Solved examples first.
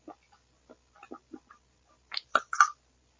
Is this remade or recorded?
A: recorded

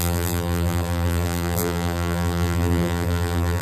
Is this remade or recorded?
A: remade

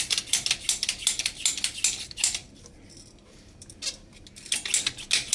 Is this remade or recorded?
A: recorded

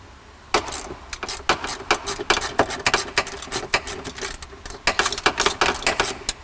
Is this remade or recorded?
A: recorded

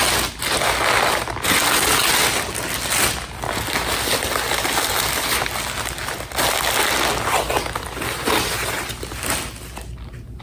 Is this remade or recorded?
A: recorded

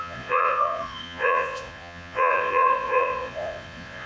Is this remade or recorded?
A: remade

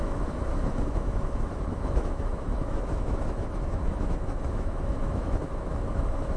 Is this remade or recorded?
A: remade